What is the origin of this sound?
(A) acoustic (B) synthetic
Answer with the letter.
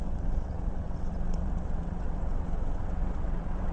B